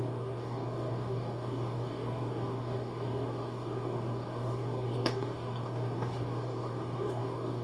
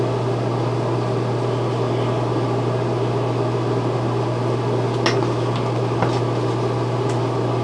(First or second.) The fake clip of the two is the first